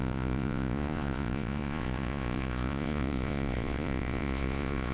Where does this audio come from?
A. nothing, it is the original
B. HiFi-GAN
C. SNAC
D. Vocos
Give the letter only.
D